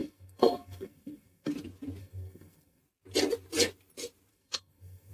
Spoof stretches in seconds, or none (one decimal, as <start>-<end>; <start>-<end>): 0.0-1.5; 2.0-2.8; 4.3-5.1